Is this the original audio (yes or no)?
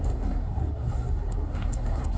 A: no